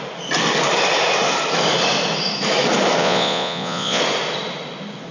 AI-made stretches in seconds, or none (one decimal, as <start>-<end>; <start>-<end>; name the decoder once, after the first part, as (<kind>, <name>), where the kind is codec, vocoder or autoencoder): 3.0-4.0 (vocoder, Vocos)